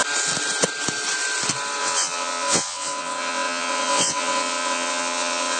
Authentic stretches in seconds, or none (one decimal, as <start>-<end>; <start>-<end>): 0.0-1.8